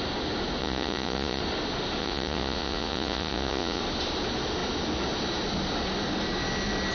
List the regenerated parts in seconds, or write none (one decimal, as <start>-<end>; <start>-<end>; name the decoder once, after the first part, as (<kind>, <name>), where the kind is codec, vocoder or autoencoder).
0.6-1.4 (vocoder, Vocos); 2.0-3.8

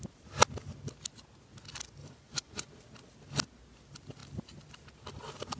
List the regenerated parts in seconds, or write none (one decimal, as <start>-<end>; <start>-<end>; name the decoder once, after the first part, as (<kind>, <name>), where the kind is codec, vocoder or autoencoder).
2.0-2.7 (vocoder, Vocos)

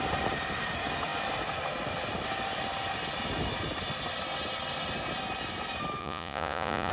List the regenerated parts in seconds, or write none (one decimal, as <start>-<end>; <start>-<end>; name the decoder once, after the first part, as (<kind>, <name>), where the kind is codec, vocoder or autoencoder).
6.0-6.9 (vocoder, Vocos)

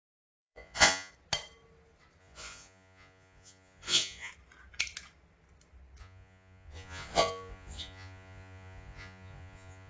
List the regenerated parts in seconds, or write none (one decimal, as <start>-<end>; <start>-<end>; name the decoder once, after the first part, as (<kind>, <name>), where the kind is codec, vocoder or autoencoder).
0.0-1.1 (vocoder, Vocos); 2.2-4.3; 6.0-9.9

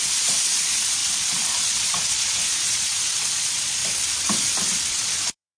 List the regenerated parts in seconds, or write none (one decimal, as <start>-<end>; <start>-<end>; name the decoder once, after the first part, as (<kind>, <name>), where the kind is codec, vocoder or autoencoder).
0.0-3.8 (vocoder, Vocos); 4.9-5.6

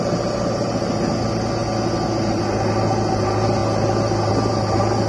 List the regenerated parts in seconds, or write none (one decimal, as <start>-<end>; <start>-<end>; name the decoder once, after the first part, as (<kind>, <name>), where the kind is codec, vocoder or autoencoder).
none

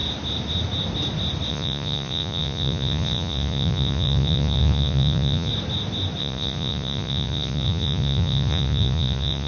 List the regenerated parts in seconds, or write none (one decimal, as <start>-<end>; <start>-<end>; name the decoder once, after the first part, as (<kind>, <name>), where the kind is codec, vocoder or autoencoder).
1.5-5.5 (vocoder, Vocos); 6.2-9.5

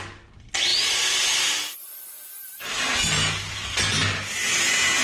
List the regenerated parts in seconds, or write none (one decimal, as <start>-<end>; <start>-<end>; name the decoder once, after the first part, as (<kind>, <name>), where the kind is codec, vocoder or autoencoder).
none